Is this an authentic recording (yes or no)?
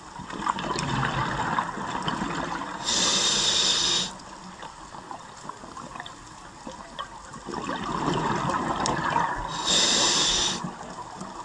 yes